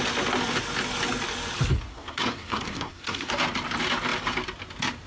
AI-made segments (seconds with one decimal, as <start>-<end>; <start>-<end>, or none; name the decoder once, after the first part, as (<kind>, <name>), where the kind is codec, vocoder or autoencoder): 1.9-3.3 (codec, SNAC)